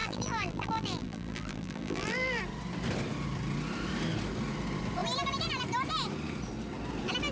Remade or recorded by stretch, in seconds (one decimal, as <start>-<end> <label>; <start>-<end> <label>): 0.0-2.4 remade; 2.4-7.3 recorded